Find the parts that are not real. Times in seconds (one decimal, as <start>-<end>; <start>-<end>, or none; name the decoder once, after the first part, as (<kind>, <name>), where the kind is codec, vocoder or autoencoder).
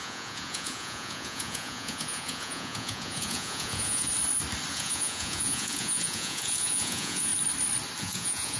0.0-4.1 (vocoder, Vocos); 4.7-7.3; 8.0-8.6